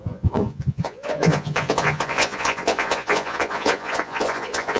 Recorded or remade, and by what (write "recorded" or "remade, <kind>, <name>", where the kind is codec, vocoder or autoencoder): remade, vocoder, Vocos